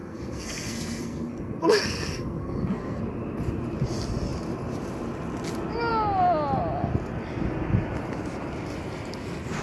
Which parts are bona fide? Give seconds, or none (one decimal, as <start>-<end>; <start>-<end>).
3.0-9.6